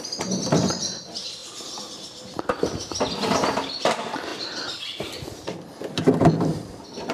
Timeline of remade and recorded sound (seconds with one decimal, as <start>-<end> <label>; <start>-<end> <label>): 0.0-1.4 remade; 1.4-3.7 recorded; 3.7-4.3 remade; 4.3-5.3 recorded; 5.3-7.1 remade